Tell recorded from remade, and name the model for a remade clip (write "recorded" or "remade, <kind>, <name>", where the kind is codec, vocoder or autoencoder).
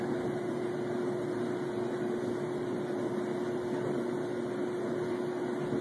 recorded